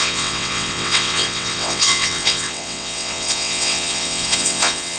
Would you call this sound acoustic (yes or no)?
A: no